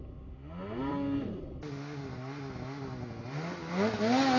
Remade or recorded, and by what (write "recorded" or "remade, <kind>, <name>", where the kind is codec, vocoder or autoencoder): recorded